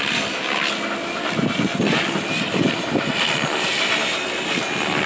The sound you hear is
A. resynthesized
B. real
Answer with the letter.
B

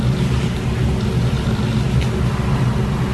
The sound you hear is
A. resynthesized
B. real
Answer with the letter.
B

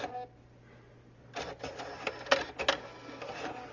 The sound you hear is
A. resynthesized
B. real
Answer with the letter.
B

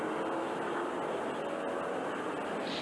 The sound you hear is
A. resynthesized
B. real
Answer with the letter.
B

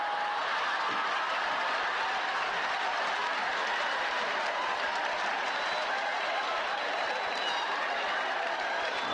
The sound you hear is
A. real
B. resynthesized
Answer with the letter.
B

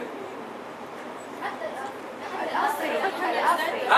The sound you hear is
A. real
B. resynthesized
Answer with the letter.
B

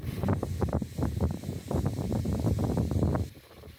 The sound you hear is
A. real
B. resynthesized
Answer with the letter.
A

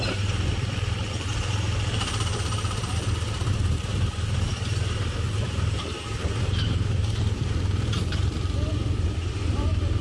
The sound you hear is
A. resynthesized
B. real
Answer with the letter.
A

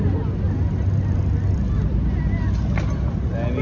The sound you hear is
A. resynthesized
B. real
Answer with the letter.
B